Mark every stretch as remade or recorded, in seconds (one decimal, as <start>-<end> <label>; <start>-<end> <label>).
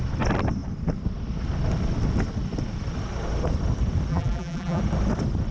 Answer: 0.0-4.1 recorded; 4.1-4.8 remade; 4.8-5.5 recorded